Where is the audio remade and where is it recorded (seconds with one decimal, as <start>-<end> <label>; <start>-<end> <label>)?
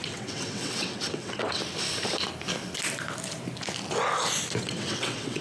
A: 0.0-1.6 remade; 1.6-4.6 recorded; 4.6-5.4 remade